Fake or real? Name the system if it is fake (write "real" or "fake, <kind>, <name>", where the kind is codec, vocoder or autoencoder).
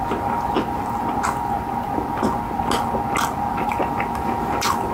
real